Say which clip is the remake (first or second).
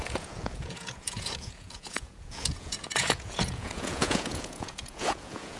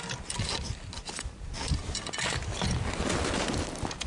first